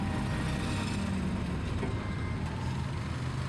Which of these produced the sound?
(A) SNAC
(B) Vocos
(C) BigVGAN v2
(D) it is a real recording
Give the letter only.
D